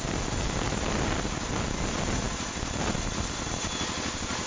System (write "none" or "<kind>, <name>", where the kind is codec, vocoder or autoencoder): none